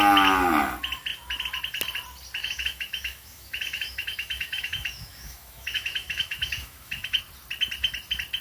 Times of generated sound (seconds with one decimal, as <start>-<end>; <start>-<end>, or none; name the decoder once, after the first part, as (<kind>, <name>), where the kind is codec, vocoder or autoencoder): 2.4-7.2 (autoencoder, DAC-VAE)